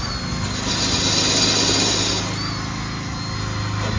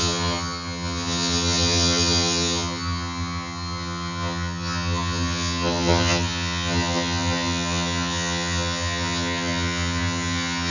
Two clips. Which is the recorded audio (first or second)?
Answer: first